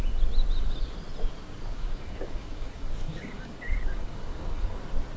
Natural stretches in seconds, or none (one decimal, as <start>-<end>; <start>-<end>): 0.0-1.7; 4.8-5.2

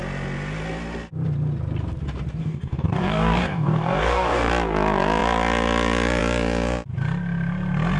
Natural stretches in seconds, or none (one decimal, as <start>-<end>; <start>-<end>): 0.0-2.4; 4.5-8.0